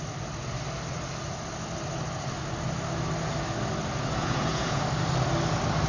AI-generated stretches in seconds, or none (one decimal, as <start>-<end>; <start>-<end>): 4.2-4.8